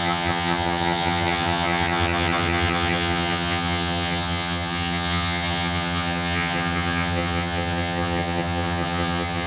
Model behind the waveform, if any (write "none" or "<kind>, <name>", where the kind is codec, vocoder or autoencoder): vocoder, HiFi-GAN